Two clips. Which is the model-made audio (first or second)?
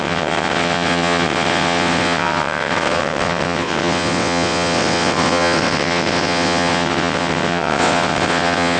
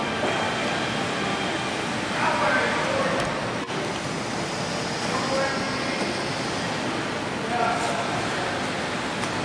first